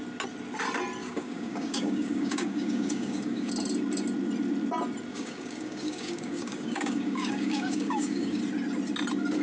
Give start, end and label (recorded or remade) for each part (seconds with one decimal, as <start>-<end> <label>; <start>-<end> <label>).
0.0-1.0 recorded; 1.0-3.5 remade; 3.5-5.1 recorded; 5.1-8.4 remade; 8.4-9.4 recorded